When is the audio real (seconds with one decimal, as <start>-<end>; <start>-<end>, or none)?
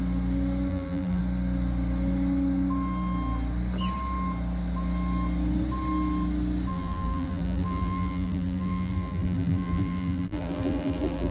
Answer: 0.0-0.7; 1.2-6.7